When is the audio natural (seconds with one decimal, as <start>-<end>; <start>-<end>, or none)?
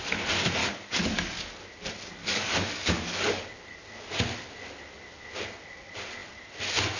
0.0-0.6; 1.5-2.2; 3.4-7.0